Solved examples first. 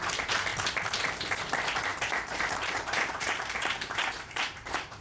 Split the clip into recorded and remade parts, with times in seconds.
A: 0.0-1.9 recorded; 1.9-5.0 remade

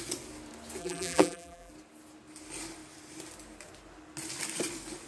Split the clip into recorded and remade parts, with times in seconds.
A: 0.0-0.8 recorded; 0.8-1.7 remade; 1.7-5.1 recorded

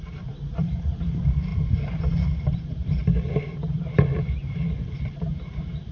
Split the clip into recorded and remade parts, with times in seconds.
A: 0.0-5.9 remade

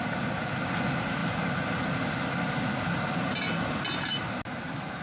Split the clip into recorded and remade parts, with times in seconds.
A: 0.0-5.0 recorded

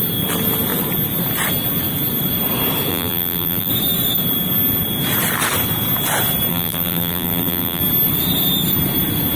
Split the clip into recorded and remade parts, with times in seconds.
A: 0.0-2.9 recorded; 2.9-3.7 remade; 3.7-6.5 recorded; 6.5-7.8 remade; 7.8-9.4 recorded

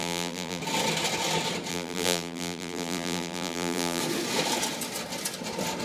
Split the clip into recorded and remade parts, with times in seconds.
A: 0.0-0.6 remade; 0.6-1.7 recorded; 1.7-4.0 remade; 4.0-5.8 recorded